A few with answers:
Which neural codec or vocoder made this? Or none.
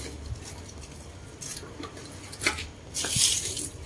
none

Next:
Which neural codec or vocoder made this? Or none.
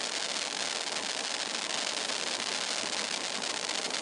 none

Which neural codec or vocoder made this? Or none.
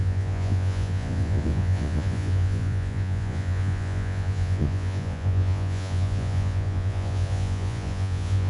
vocoder, Vocos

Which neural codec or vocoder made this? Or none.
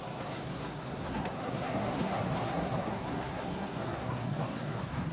codec, SNAC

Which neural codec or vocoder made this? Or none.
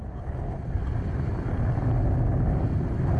none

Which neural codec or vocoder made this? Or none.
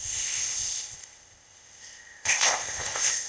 codec, ZipCodec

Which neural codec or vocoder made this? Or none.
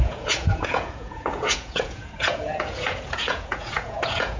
vocoder, Vocos